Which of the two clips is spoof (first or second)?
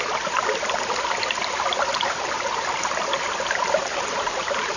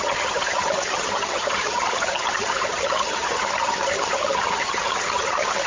second